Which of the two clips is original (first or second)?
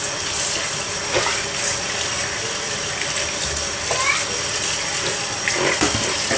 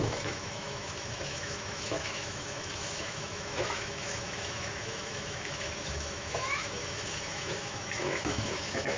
first